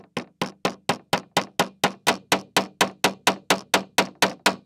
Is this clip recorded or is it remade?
recorded